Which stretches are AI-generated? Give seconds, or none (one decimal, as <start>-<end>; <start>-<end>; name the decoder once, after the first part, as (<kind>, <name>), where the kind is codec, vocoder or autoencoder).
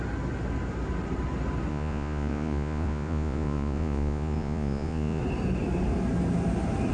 1.7-5.2 (vocoder, Vocos)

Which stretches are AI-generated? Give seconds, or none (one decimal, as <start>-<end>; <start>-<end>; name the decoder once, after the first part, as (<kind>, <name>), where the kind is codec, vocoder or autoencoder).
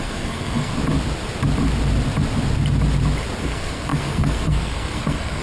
0.0-0.7 (codec, SNAC); 3.4-5.4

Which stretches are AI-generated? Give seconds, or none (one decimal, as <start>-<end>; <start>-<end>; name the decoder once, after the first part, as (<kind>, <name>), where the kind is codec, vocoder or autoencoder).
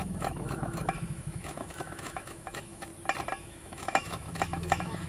0.0-2.9 (autoencoder, DAC-VAE); 3.4-5.1